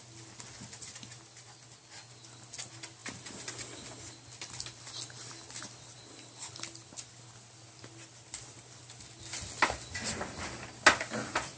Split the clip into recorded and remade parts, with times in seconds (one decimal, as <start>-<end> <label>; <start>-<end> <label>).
0.0-11.6 recorded